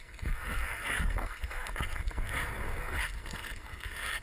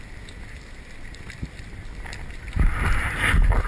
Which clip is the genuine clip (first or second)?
second